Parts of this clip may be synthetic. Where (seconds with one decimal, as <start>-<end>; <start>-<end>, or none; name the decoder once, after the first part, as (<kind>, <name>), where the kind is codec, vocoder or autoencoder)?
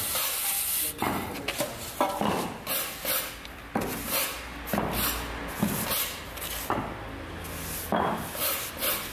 none